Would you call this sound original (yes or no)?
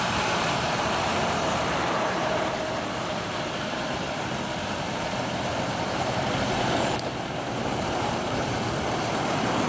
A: no